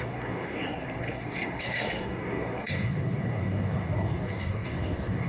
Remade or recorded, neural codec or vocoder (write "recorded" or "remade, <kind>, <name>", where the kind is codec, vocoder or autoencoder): remade, codec, SNAC